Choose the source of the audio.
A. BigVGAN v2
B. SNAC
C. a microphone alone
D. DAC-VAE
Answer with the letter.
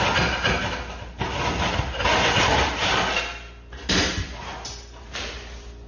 C